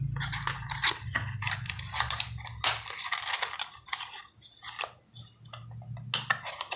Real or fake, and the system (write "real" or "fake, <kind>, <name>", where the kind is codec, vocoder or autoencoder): real